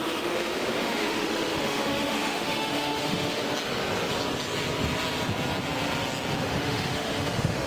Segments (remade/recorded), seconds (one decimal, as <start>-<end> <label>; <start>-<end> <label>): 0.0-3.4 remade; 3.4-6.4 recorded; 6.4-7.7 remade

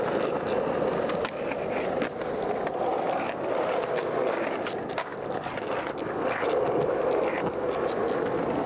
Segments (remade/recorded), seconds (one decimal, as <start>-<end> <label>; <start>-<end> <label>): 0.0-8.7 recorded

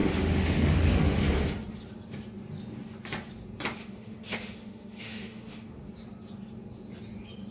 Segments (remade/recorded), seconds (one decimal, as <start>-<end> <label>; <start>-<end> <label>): 0.0-1.2 remade; 1.2-3.8 recorded; 3.8-5.9 remade; 5.9-7.5 recorded